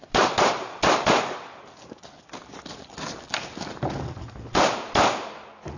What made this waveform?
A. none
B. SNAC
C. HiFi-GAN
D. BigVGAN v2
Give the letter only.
A